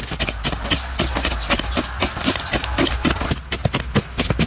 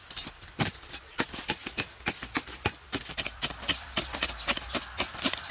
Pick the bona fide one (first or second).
first